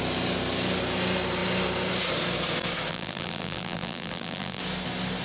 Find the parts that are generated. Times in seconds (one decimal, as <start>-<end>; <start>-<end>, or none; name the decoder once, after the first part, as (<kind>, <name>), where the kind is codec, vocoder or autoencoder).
2.9-4.6 (vocoder, BigVGAN v2)